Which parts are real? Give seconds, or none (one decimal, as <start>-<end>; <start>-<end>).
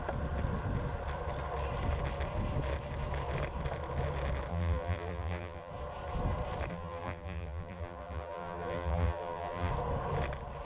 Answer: 0.0-4.5; 5.7-6.7; 9.7-10.6